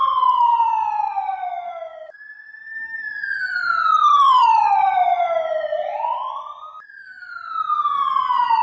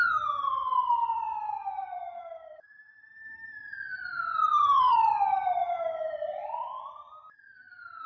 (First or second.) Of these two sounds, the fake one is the second